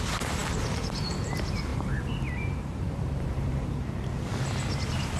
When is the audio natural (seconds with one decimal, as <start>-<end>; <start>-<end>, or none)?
4.1-5.2